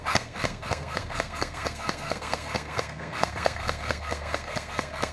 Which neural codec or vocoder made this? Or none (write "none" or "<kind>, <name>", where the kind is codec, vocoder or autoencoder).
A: codec, SNAC